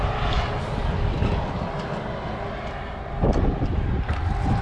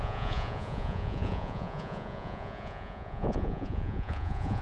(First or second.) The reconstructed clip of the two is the second